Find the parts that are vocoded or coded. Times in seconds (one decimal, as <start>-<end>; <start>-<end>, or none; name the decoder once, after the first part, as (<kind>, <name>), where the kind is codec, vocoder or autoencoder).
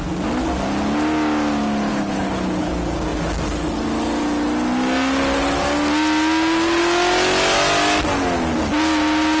1.9-2.7 (codec, HILCodec)